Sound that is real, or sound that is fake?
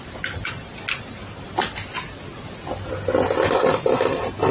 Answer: real